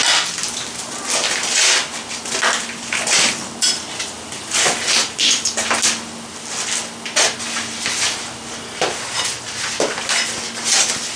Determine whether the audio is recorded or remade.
recorded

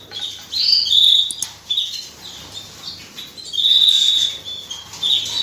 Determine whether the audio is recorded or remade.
recorded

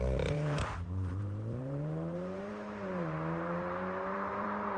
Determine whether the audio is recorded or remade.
remade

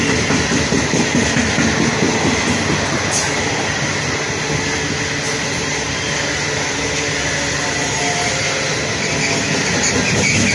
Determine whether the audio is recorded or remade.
recorded